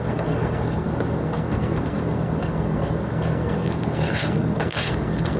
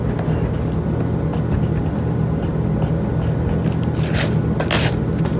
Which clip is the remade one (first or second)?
first